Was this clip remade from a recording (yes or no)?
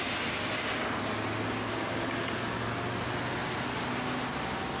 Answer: no